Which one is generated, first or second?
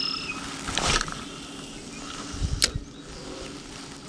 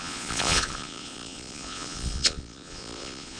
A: second